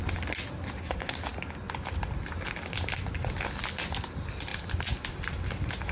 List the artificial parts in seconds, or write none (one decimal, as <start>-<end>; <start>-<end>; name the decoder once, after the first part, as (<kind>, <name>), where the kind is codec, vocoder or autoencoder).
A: none